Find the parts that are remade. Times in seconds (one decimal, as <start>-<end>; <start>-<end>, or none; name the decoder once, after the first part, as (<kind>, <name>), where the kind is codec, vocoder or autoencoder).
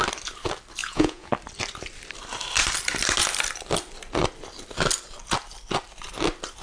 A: 0.8-1.3 (vocoder, Vocos)